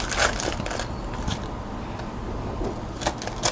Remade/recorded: recorded